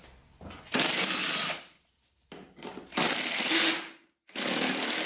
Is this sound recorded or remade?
recorded